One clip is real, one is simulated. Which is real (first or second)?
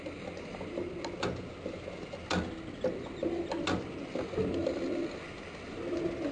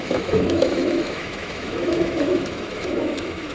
first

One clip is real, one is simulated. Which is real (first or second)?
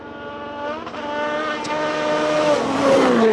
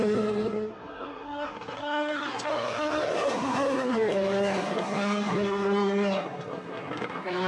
first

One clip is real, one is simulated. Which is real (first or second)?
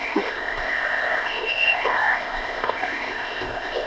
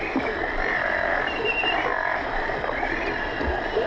second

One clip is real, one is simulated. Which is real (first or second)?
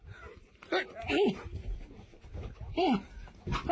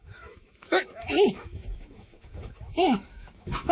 first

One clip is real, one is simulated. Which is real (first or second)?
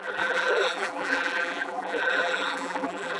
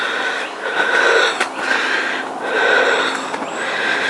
second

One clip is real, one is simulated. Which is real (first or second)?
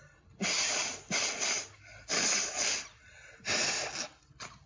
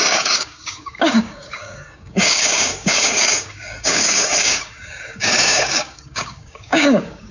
first